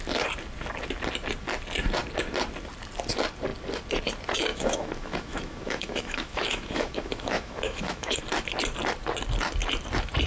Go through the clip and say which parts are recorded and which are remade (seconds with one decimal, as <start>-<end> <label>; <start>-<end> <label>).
0.0-4.5 recorded; 4.5-8.2 remade; 8.2-10.3 recorded